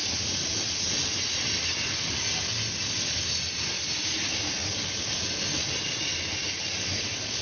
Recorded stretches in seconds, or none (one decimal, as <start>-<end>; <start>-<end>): 0.0-7.4